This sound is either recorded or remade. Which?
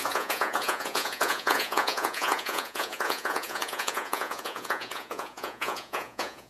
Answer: remade